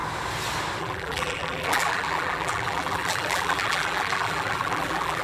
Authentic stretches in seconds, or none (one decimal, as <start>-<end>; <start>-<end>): 0.0-0.8